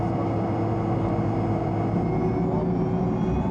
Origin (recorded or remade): recorded